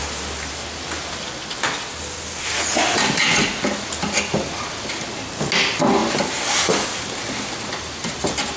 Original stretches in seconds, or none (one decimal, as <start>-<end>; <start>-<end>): 0.0-8.6